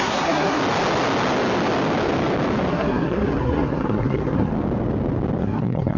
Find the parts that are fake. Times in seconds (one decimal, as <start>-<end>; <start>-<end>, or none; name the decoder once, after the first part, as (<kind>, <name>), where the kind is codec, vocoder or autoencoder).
0.0-0.6 (codec, SNAC); 2.7-4.5; 5.4-6.0